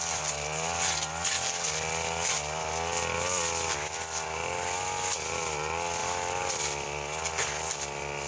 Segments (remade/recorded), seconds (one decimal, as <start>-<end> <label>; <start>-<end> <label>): 0.0-8.3 recorded